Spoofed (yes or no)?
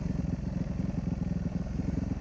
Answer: yes